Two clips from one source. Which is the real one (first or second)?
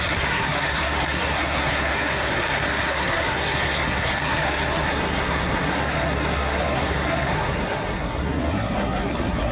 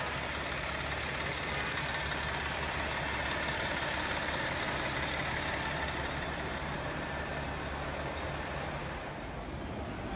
second